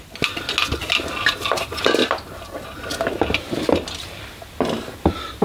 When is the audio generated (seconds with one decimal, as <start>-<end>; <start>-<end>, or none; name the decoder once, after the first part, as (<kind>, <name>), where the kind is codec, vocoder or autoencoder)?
none